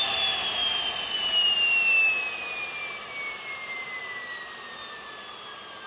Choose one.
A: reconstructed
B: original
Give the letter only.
B